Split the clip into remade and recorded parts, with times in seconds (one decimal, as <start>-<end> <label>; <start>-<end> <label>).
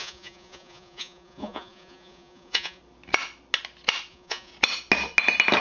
0.0-2.8 remade; 2.8-4.1 recorded; 4.1-4.5 remade; 4.5-5.6 recorded